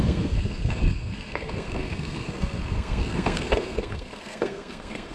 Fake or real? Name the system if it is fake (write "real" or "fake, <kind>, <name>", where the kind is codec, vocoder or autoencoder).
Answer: fake, codec, SNAC